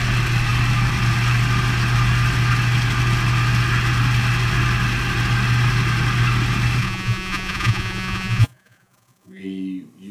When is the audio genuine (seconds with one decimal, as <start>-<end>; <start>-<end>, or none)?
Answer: 0.0-6.8; 9.4-10.1